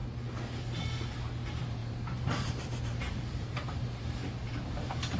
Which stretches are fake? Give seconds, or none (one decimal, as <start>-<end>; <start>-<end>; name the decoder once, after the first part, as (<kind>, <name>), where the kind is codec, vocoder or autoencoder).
1.1-5.2 (vocoder, BigVGAN v2)